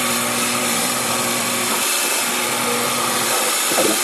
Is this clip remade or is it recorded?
remade